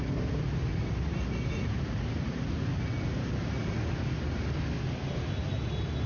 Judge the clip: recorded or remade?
recorded